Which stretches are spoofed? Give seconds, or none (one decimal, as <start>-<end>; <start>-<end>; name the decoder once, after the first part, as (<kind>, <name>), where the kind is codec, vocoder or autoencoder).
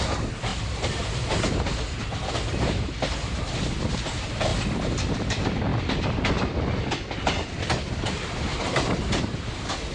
0.5-4.0 (vocoder, BigVGAN v2); 4.5-5.2; 5.7-6.6; 8.5-9.2